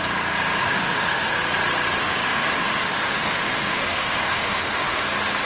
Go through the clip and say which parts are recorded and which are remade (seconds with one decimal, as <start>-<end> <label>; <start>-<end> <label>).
0.0-0.6 recorded; 0.6-1.4 remade; 1.4-2.0 recorded; 2.0-5.0 remade; 5.0-5.5 recorded